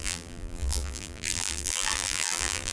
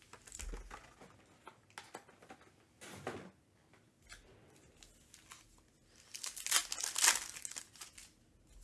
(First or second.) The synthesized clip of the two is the first